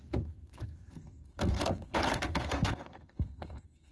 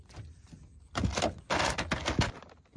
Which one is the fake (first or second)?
first